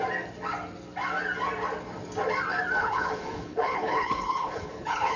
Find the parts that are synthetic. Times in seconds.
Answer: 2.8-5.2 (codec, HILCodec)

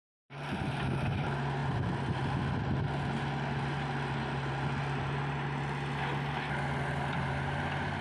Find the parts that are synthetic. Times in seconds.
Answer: none

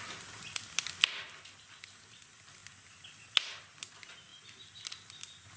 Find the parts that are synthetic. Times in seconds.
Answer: none

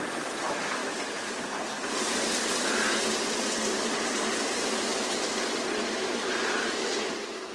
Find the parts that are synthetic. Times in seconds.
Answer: none

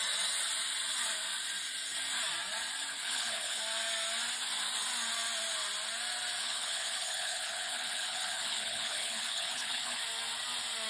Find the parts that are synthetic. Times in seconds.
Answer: 2.9-3.6 (codec, HILCodec); 6.4-10.0

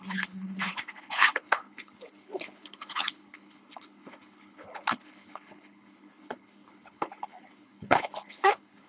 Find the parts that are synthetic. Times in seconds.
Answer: 0.0-8.9 (codec, HILCodec)

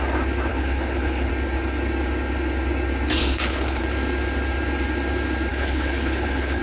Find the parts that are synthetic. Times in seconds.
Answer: 0.5-1.3 (codec, HILCodec); 3.2-3.8; 5.5-6.6